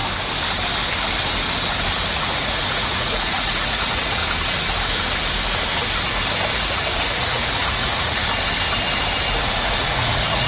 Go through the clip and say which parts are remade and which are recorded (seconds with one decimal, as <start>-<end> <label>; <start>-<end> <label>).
0.0-2.1 recorded; 2.1-4.2 remade; 4.2-6.5 recorded; 6.5-8.2 remade; 8.2-9.4 recorded; 9.4-10.5 remade

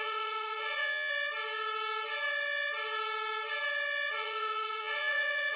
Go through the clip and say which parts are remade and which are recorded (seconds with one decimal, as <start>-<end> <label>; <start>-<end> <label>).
0.0-1.1 remade; 1.1-4.1 recorded; 4.1-5.6 remade

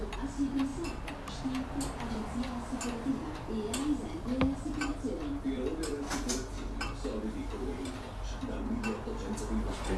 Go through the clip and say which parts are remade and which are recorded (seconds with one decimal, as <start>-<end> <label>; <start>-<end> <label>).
0.0-10.0 recorded

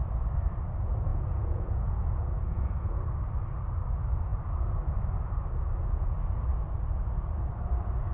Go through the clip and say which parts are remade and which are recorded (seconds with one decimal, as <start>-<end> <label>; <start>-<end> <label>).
0.0-1.1 recorded; 1.1-3.0 remade; 3.0-8.1 recorded

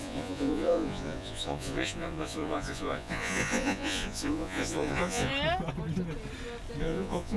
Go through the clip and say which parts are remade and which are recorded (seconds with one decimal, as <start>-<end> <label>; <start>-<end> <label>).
0.0-5.3 remade; 5.3-6.8 recorded; 6.8-7.4 remade

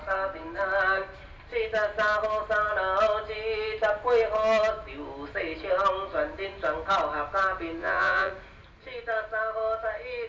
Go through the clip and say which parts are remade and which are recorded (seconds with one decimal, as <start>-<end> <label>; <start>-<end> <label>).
0.0-7.8 recorded; 7.8-8.3 remade; 8.3-10.3 recorded

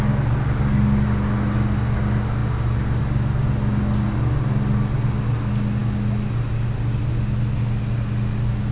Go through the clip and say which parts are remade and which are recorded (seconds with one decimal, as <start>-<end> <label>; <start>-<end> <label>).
0.0-8.7 recorded

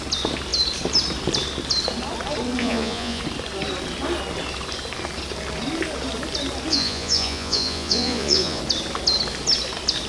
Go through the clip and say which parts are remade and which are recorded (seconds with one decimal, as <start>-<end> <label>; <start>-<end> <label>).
0.0-2.6 recorded; 2.6-3.2 remade; 3.2-6.7 recorded; 6.7-8.6 remade; 8.6-10.1 recorded